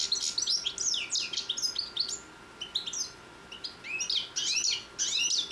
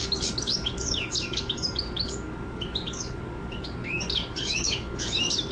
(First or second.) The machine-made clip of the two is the second